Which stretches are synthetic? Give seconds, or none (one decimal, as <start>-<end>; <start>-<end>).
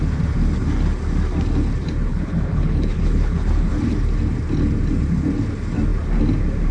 2.1-3.7